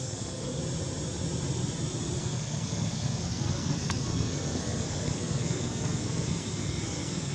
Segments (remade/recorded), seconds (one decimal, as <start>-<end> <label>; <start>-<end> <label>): 0.0-0.6 remade; 0.6-2.2 recorded; 2.2-7.3 remade